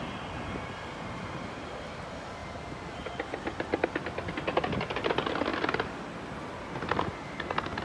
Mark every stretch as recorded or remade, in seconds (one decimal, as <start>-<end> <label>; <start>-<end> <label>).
0.0-7.8 recorded